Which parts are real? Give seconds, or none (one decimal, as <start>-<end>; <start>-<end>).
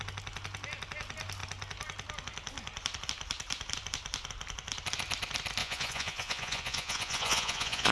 0.0-5.6